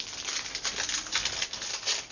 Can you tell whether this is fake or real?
real